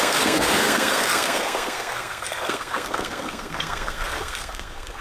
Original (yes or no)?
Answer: no